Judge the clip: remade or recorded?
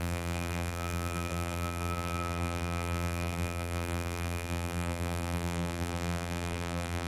remade